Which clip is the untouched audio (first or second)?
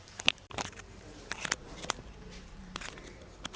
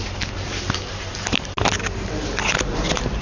second